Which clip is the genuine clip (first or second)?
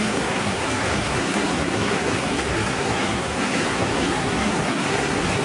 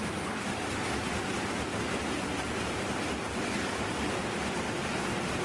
second